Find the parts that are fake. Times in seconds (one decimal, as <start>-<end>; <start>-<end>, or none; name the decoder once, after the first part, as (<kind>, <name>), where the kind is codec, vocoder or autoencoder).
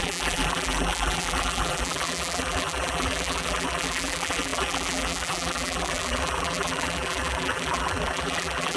0.0-8.8 (vocoder, BigVGAN v2)